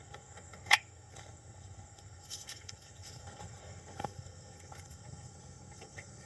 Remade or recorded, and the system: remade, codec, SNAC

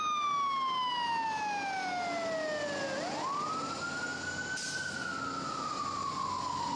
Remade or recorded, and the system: recorded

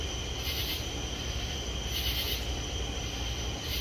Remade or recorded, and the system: recorded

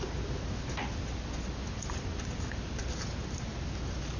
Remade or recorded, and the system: recorded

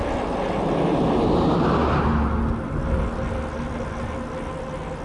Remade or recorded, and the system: recorded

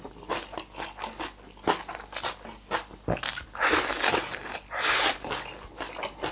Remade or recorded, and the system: recorded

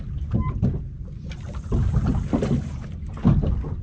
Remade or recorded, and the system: recorded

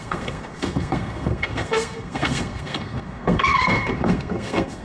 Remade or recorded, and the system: remade, codec, SNAC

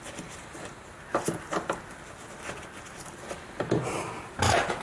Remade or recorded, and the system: recorded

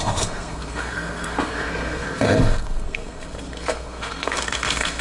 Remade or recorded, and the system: remade, codec, SNAC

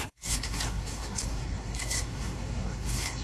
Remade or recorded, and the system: remade, codec, SNAC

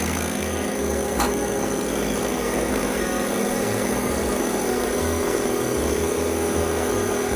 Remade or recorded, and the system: remade, codec, SNAC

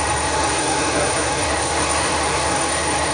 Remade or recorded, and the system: remade, codec, SNAC